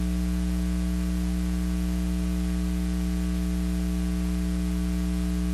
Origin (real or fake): real